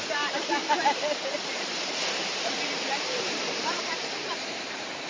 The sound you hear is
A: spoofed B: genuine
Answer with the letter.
A